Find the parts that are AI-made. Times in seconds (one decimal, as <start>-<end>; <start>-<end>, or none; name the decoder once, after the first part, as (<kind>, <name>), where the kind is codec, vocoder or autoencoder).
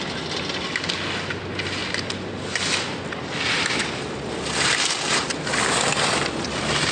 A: none